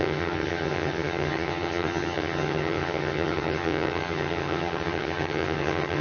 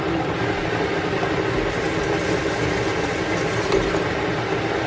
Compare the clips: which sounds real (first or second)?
second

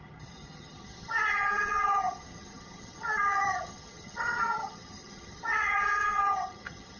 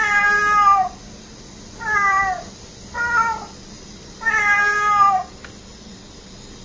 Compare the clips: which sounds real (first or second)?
second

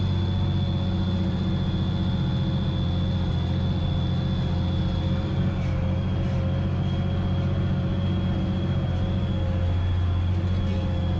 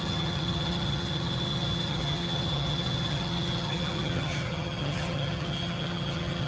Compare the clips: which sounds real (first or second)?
first